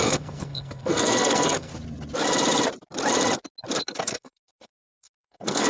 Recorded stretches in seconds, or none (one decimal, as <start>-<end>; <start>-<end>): 1.7-3.8